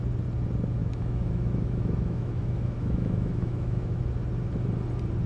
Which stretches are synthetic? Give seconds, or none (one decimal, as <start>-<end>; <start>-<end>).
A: 0.8-4.0